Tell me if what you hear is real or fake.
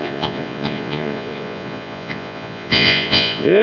fake